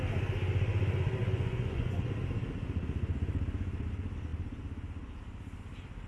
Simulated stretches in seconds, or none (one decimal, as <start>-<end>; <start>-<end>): 1.2-2.1